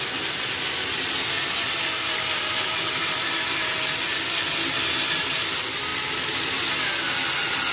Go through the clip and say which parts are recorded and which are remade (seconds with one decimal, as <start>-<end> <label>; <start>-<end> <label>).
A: 0.0-7.7 recorded